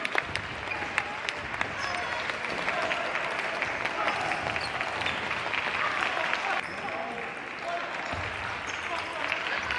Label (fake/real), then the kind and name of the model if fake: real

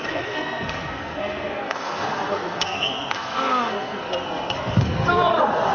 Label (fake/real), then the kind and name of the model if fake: fake, codec, SNAC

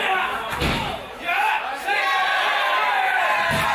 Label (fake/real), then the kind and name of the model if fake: real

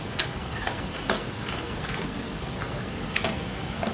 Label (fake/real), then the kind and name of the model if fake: fake, codec, SNAC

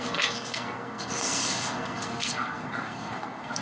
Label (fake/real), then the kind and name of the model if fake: fake, codec, SNAC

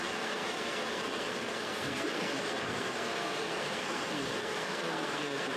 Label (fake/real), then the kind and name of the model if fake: fake, codec, SNAC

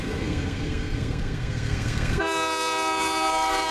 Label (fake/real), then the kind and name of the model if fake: fake, codec, SNAC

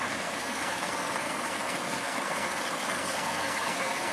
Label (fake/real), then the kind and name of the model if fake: fake, codec, SNAC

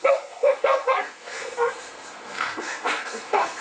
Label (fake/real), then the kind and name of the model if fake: fake, codec, SNAC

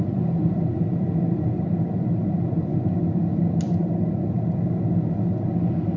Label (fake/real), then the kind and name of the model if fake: real